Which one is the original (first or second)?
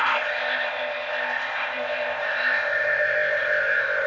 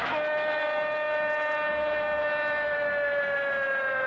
second